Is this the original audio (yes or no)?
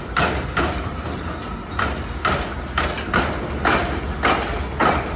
yes